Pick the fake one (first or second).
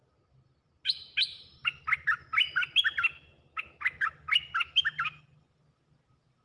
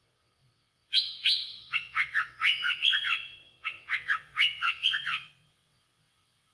second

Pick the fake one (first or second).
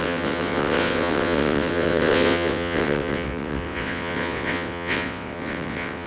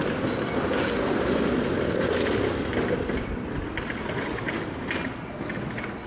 first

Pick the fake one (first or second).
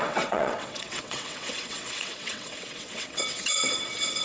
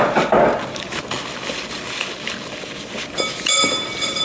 first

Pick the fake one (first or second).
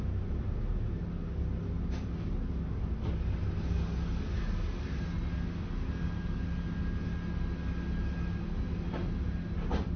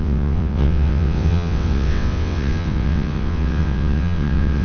second